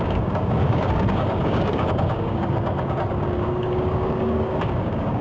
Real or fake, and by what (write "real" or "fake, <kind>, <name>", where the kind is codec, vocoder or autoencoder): fake, codec, DAC